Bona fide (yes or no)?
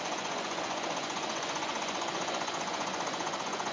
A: no